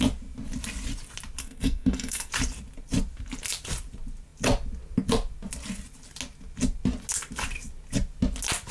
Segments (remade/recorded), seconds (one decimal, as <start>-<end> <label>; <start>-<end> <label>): 0.0-1.4 recorded; 1.4-2.3 remade; 2.3-8.7 recorded